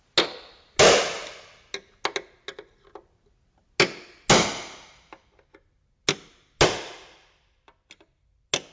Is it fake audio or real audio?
real